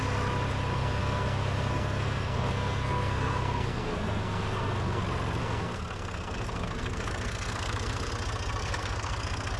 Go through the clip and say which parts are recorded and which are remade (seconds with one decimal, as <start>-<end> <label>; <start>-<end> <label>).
0.0-0.7 recorded; 0.7-5.0 remade; 5.0-5.4 recorded; 5.4-8.1 remade; 8.1-8.6 recorded; 8.6-9.6 remade